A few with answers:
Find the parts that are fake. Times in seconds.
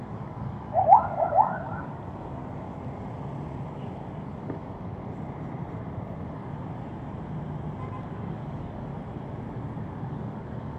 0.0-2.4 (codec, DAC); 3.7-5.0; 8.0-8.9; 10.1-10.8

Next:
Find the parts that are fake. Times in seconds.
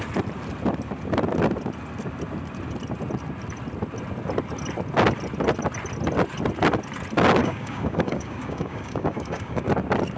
7.4-9.7 (codec, DAC)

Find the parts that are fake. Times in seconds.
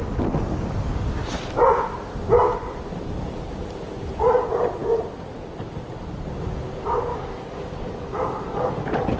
7.1-8.7 (codec, DAC)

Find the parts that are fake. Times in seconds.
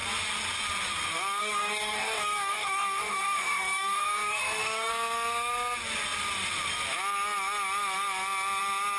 1.4-4.9 (codec, DAC)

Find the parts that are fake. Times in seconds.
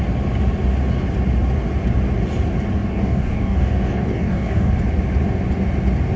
2.8-4.7 (codec, DAC)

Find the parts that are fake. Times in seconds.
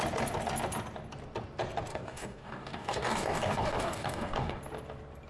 1.9-4.6 (codec, DAC)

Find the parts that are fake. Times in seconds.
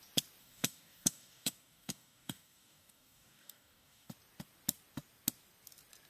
0.4-4.1 (codec, DAC)